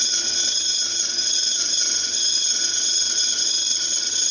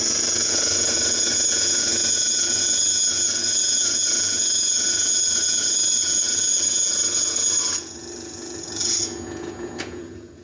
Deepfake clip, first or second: second